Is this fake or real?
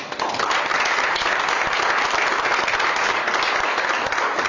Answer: real